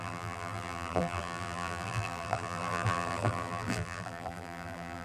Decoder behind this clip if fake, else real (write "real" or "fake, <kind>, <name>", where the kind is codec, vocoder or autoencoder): fake, vocoder, BigVGAN v2